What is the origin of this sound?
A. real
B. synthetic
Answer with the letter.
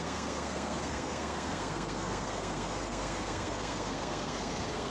B